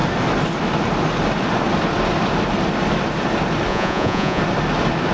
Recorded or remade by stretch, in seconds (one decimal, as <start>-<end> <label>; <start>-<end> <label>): 0.0-3.7 recorded; 3.7-4.4 remade; 4.4-5.1 recorded